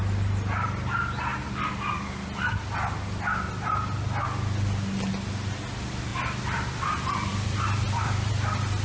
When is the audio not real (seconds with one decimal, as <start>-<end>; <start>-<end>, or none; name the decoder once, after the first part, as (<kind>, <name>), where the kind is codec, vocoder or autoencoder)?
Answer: 6.1-8.3 (vocoder, BigVGAN v2)